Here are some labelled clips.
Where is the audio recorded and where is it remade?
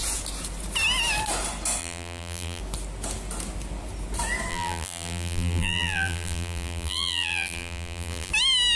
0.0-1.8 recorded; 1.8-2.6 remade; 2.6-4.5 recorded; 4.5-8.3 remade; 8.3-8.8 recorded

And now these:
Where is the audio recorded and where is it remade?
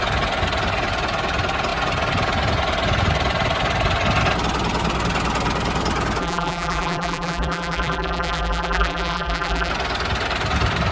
0.0-6.2 recorded; 6.2-9.7 remade; 9.7-10.9 recorded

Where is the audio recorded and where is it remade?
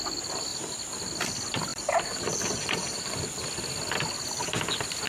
0.0-1.7 recorded; 1.7-3.5 remade; 3.5-5.1 recorded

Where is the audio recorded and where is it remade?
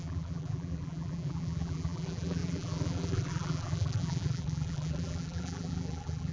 0.0-6.3 remade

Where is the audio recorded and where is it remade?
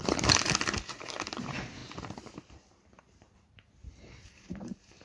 0.0-1.4 recorded; 1.4-5.0 remade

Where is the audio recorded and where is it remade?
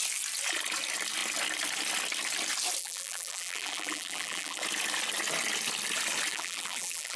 0.0-2.8 recorded; 2.8-4.6 remade; 4.6-6.3 recorded; 6.3-7.2 remade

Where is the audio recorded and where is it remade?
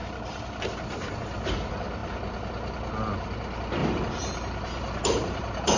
0.0-0.6 remade; 0.6-3.8 recorded; 3.8-5.8 remade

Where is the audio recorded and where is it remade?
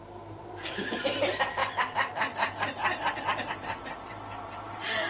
0.0-5.1 remade